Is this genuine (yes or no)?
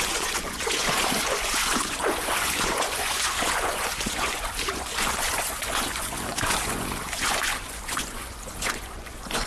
no